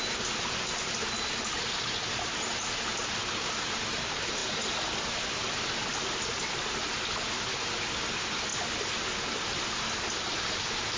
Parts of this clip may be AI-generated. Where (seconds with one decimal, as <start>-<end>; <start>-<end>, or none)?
none